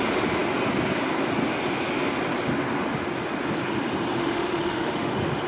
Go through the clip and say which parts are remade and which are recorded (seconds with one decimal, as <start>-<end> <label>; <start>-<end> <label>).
0.0-4.2 recorded; 4.2-5.1 remade; 5.1-5.5 recorded